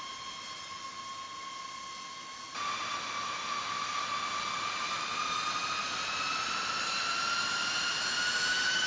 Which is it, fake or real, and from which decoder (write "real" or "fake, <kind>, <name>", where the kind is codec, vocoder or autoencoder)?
real